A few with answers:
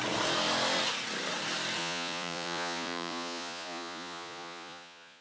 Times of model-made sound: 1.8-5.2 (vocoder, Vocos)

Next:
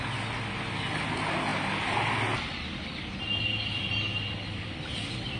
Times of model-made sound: none

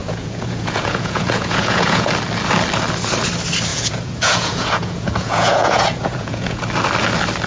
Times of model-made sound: 0.0-2.1 (vocoder, Vocos); 3.7-6.6